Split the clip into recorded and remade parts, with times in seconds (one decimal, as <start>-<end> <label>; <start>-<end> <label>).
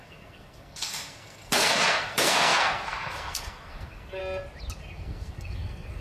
0.0-4.2 remade; 4.2-4.8 recorded; 4.8-6.0 remade